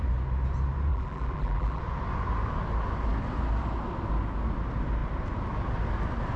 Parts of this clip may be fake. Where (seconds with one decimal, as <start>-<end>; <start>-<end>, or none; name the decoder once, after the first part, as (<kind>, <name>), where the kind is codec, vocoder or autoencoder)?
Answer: 0.9-1.8 (vocoder, BigVGAN v2)